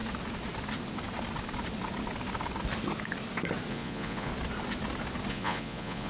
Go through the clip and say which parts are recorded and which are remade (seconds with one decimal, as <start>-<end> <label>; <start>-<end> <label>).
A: 0.0-3.7 recorded; 3.7-4.3 remade; 4.3-5.3 recorded; 5.3-6.1 remade